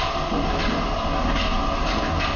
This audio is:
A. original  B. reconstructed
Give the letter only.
A